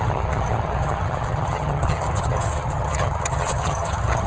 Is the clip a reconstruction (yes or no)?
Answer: yes